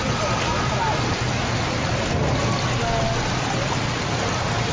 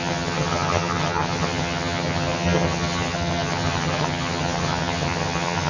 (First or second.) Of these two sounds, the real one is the first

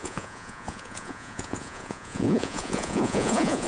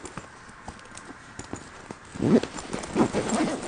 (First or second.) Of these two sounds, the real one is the second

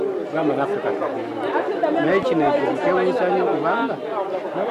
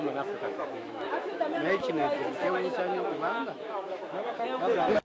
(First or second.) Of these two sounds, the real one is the first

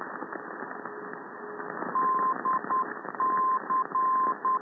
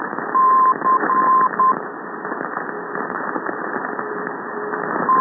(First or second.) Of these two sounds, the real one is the first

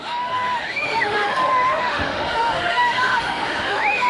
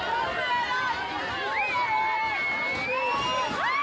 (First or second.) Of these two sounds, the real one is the second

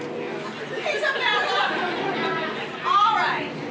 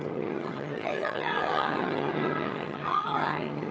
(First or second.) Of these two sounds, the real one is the first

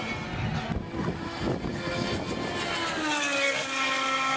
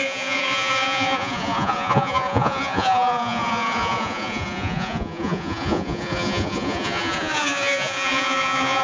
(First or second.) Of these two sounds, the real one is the first